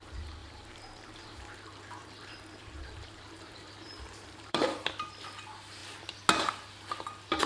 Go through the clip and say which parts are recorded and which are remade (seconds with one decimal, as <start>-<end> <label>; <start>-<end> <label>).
0.0-0.4 recorded; 0.4-4.9 remade; 4.9-7.5 recorded